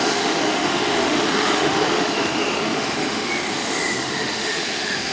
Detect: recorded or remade remade